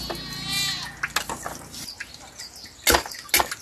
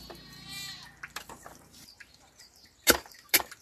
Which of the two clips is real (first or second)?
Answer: first